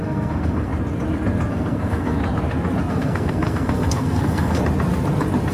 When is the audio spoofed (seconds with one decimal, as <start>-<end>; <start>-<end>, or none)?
0.0-0.7; 1.5-2.2; 2.9-4.6